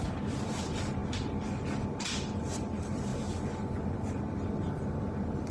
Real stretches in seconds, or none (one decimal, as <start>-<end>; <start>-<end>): 0.0-5.5